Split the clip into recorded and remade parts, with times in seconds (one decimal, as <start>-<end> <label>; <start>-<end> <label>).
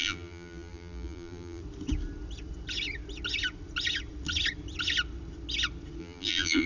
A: 0.0-1.6 remade; 1.6-6.0 recorded; 6.0-6.7 remade